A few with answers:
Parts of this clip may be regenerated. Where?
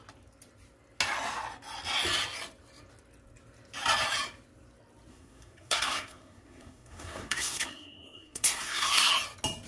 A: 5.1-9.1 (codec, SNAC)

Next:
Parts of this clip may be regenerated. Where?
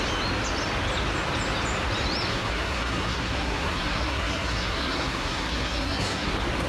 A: 2.3-6.3 (codec, SNAC)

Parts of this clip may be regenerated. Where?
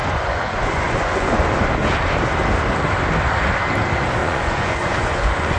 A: 0.0-1.5 (vocoder, Vocos); 4.2-5.6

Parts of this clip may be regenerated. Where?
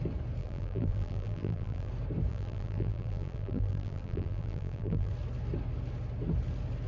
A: 0.4-1.9 (vocoder, BigVGAN v2); 2.3-5.1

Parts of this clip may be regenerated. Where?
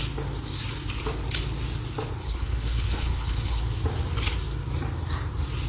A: 2.2-3.6 (codec, HILCodec)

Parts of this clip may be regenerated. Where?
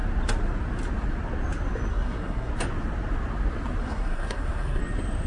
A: 1.9-2.5 (codec, SNAC); 3.8-4.8